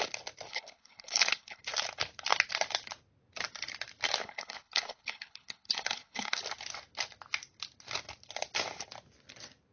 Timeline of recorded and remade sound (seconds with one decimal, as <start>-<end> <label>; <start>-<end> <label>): 0.0-0.5 recorded; 0.5-1.6 remade; 1.6-4.2 recorded; 4.2-6.4 remade; 6.4-9.7 recorded